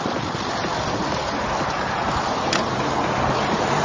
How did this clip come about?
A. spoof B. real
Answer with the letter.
B